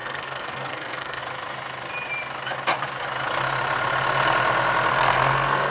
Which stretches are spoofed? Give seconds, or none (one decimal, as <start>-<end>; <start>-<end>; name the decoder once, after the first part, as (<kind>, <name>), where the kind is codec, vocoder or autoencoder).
0.0-1.2 (codec, SNAC); 4.9-5.7